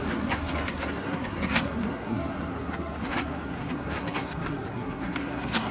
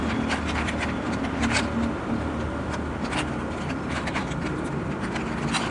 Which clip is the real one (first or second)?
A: second